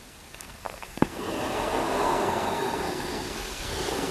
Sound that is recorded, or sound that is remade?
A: remade